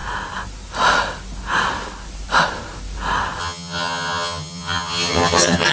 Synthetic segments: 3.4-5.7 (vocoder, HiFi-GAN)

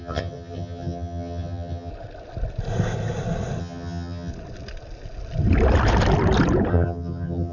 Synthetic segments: 0.0-1.9 (vocoder, HiFi-GAN); 3.6-4.3; 6.7-7.5

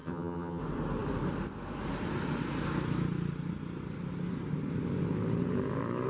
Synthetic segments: 0.0-0.6 (vocoder, HiFi-GAN)

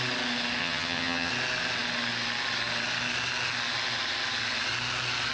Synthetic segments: 0.6-1.3 (vocoder, HiFi-GAN)